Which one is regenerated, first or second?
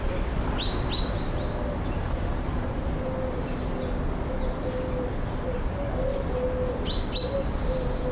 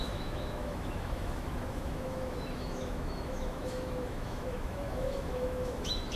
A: second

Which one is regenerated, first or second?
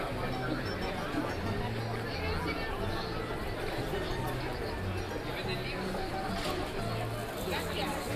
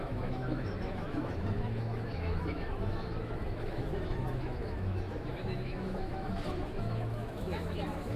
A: second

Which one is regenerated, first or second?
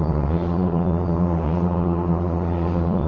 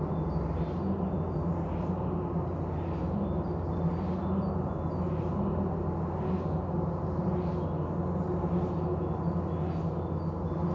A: first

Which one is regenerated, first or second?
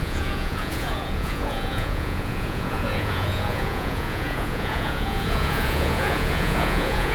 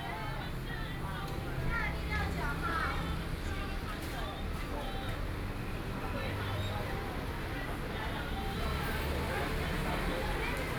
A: first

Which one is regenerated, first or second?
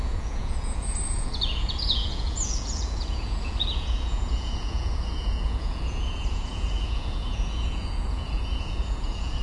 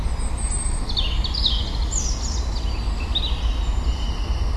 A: first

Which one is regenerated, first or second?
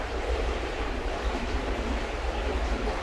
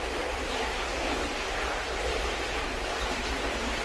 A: first